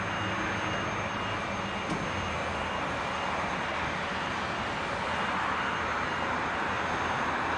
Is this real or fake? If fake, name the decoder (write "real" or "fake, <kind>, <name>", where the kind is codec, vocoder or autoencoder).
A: real